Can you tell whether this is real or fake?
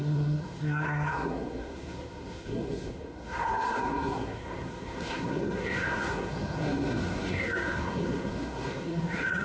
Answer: fake